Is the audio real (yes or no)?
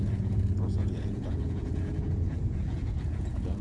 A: no